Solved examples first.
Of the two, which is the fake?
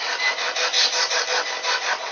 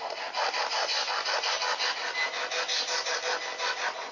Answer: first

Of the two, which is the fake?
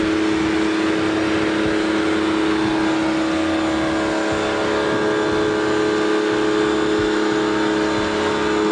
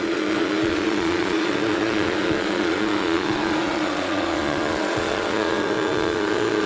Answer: second